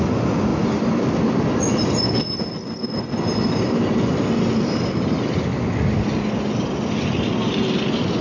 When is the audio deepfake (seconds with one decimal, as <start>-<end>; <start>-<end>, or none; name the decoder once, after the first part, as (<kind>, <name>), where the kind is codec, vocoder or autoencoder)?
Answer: none